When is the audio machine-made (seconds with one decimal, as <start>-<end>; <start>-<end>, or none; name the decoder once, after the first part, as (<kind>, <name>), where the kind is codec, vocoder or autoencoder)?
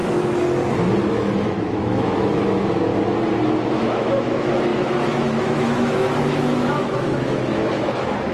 1.1-2.9 (autoencoder, DAC-VAE); 3.8-8.3